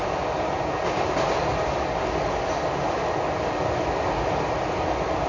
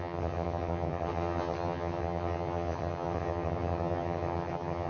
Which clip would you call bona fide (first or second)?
first